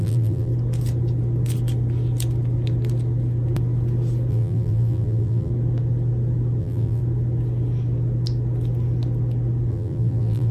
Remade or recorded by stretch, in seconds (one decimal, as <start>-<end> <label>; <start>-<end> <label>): 0.0-0.5 remade; 0.5-4.3 recorded; 4.3-5.5 remade; 5.5-6.6 recorded; 6.6-7.0 remade; 7.0-9.7 recorded; 9.7-10.5 remade